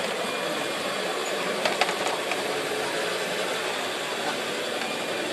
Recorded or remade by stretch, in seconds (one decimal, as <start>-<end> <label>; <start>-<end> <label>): 0.0-1.2 recorded; 1.2-3.6 remade; 3.6-5.3 recorded